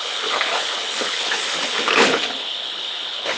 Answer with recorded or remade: remade